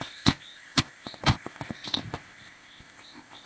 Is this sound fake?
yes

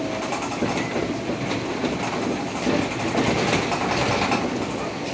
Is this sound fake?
no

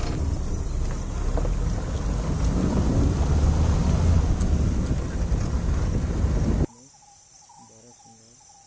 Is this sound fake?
no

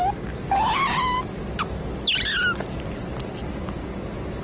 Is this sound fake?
no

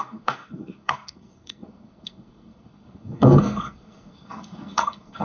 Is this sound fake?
yes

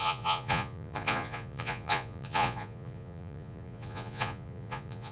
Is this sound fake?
yes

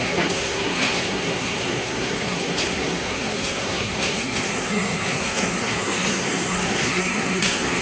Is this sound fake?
yes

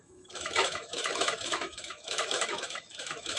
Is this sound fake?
yes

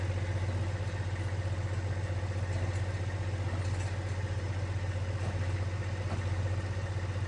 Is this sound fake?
no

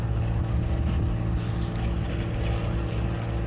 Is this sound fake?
no